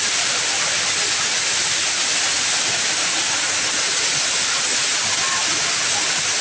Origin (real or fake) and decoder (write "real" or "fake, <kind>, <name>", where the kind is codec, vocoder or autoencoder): real